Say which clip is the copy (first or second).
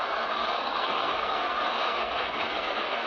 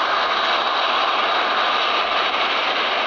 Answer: first